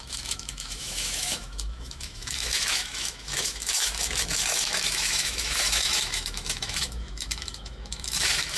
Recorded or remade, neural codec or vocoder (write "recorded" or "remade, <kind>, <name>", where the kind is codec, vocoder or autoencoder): remade, autoencoder, DAC-VAE